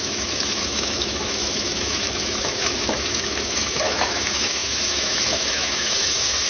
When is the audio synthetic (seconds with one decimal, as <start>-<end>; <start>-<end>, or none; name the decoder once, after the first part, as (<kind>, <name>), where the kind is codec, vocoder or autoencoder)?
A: 0.0-6.5 (autoencoder, DAC-VAE)